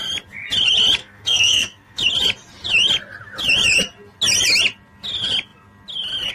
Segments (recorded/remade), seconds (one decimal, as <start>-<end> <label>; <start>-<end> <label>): 0.0-1.0 recorded; 1.0-2.0 remade; 2.0-6.3 recorded